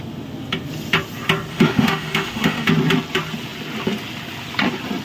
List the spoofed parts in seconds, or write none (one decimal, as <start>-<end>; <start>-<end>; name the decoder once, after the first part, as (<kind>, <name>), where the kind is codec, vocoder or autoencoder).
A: 1.5-2.7 (autoencoder, DAC-VAE)